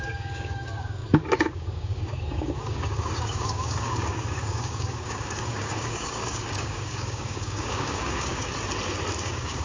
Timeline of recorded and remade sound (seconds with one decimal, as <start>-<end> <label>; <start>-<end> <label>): 0.0-8.5 remade; 8.5-9.2 recorded; 9.2-9.6 remade